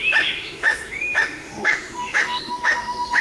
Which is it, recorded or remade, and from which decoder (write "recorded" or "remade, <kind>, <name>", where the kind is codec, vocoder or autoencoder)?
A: remade, autoencoder, DAC-VAE